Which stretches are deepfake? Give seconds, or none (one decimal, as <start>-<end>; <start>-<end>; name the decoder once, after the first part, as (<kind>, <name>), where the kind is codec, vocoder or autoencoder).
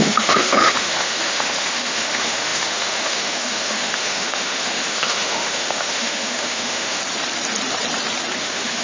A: 0.0-7.0 (autoencoder, DAC-VAE); 8.4-8.8